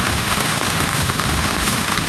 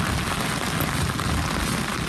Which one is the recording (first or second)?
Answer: second